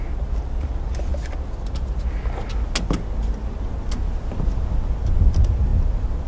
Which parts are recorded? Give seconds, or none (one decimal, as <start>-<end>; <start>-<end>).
0.0-6.3